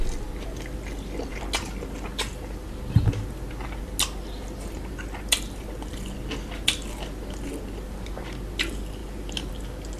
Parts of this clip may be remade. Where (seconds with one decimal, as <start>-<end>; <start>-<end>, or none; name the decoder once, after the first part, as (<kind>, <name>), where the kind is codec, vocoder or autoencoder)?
none